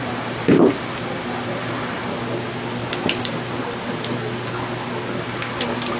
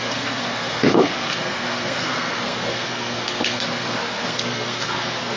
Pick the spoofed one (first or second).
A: second